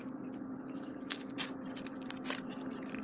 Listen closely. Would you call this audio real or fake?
real